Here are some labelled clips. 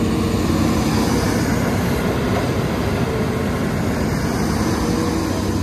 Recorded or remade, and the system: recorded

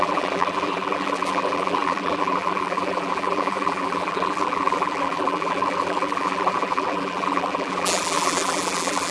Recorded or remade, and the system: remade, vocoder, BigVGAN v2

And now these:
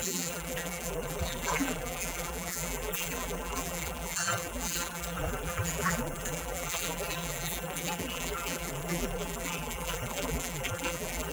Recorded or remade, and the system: remade, vocoder, BigVGAN v2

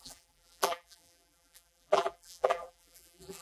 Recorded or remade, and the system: remade, vocoder, BigVGAN v2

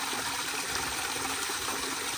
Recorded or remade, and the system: remade, vocoder, BigVGAN v2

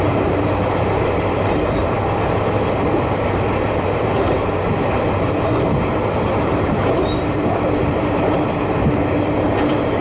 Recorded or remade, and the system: remade, vocoder, BigVGAN v2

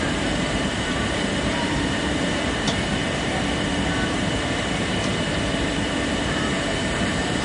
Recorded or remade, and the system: remade, vocoder, BigVGAN v2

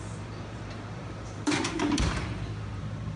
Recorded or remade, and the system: remade, vocoder, BigVGAN v2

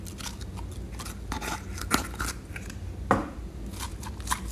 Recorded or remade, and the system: recorded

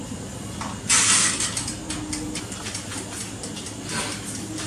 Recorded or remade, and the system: recorded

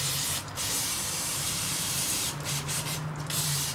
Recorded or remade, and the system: remade, vocoder, BigVGAN v2